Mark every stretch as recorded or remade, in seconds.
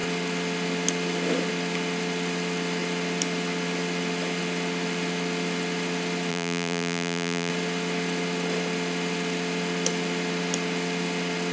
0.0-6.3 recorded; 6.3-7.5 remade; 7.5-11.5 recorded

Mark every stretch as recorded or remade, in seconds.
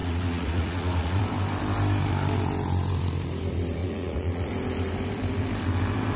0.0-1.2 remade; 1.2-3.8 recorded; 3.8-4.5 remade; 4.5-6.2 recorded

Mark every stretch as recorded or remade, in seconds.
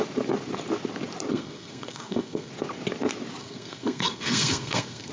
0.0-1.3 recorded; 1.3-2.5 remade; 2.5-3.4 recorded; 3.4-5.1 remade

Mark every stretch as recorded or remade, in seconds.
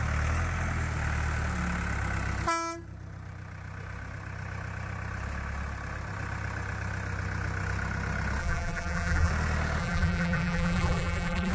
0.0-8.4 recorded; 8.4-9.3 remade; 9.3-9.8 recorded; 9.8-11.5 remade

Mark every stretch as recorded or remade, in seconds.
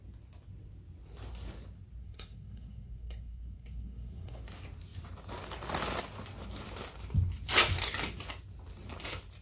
0.0-2.0 recorded; 2.0-4.4 remade; 4.4-9.4 recorded